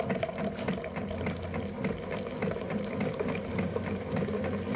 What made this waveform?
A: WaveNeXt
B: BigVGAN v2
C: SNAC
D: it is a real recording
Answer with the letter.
D